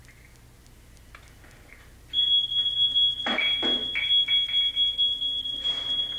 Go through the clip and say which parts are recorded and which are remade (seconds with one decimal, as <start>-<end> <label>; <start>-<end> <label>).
0.0-6.2 recorded